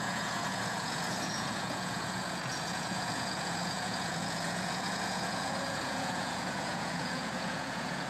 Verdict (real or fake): fake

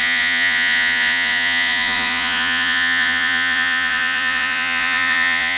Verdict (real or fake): fake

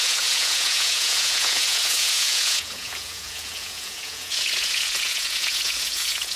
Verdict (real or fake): fake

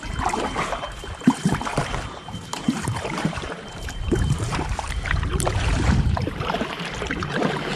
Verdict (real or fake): fake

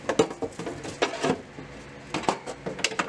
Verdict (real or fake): real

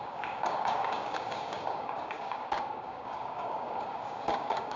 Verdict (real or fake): fake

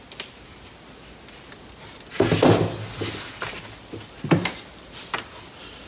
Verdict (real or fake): real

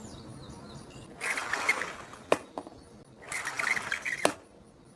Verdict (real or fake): real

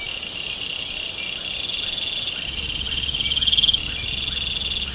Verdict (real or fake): real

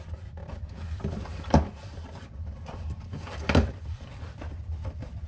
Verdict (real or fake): fake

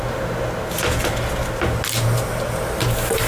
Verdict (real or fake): real